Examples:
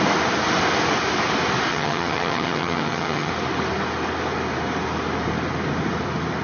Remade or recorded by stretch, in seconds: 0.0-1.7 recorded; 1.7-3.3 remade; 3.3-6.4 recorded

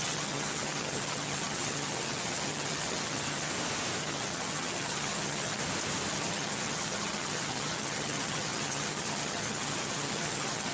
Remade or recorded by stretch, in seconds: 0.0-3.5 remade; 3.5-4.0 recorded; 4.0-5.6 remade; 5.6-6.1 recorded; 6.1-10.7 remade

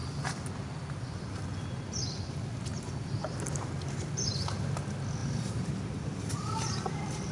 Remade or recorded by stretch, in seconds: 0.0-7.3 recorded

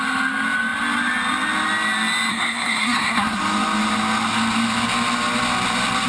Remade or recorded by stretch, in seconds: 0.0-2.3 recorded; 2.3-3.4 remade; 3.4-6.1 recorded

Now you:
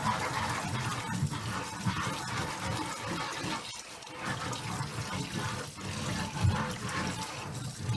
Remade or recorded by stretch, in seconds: 0.0-8.0 recorded